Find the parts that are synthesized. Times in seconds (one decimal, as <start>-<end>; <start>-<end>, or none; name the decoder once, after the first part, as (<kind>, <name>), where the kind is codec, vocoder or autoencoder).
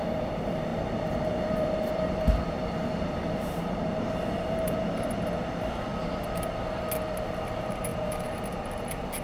0.0-0.7 (vocoder, BigVGAN v2); 1.3-5.9; 7.2-9.2